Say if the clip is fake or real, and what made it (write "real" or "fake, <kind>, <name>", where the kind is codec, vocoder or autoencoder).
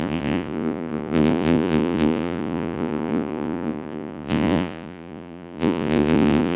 fake, vocoder, Vocos